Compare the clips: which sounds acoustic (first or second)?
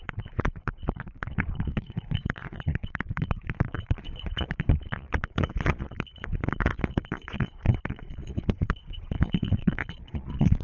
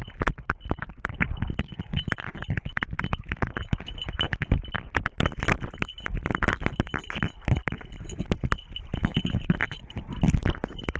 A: second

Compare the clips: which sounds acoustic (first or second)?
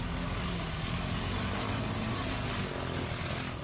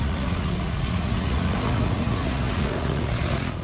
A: first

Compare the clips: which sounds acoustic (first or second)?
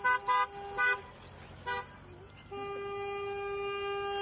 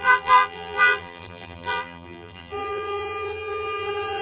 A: first